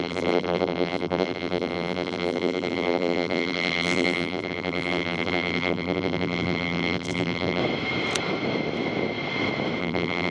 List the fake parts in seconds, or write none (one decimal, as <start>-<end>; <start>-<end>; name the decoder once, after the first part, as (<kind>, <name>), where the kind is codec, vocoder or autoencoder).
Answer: 0.0-7.6 (vocoder, BigVGAN v2); 9.8-10.3